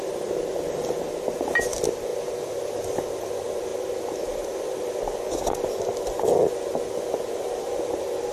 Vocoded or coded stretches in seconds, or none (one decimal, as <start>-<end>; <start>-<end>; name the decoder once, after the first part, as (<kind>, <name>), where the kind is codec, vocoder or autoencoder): none